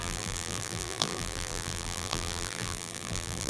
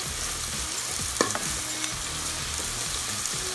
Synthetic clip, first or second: first